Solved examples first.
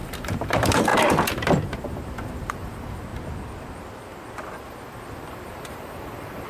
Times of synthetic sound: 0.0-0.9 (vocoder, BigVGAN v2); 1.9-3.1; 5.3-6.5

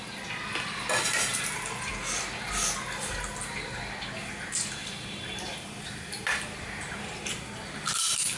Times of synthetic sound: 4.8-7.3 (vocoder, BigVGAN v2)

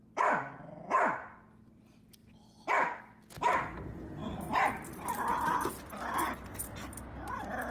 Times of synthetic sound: 4.2-6.0 (vocoder, BigVGAN v2)

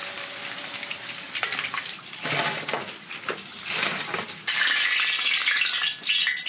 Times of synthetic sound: 0.0-2.3 (vocoder, BigVGAN v2); 3.5-6.1

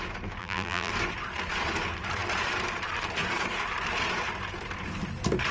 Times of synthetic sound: 0.4-0.9 (vocoder, BigVGAN v2)

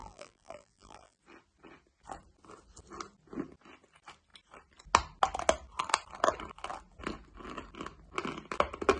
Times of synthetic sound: 0.0-1.2 (vocoder, BigVGAN v2)